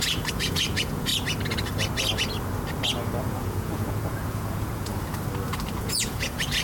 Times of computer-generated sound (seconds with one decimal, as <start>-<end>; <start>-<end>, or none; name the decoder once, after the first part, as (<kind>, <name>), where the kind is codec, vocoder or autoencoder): 0.0-1.1 (vocoder, Vocos); 3.2-4.9; 5.8-6.6

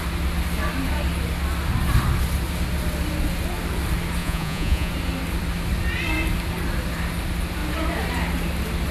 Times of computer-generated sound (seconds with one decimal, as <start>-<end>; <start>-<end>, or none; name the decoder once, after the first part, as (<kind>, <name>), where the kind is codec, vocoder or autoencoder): 4.2-4.9 (vocoder, Vocos)